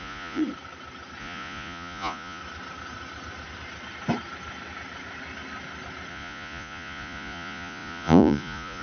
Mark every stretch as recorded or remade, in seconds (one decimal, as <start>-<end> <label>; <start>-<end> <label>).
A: 0.0-0.4 remade; 0.4-1.2 recorded; 1.2-2.4 remade; 2.4-6.1 recorded; 6.1-8.8 remade